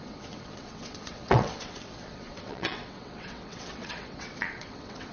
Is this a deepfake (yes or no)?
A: yes